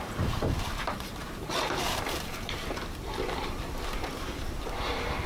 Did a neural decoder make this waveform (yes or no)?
yes